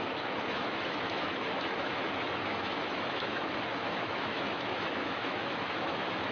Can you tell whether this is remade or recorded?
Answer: remade